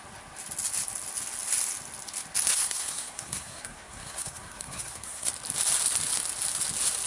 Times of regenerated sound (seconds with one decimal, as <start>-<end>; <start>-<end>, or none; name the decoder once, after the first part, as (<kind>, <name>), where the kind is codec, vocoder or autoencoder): 2.5-5.3 (codec, SNAC)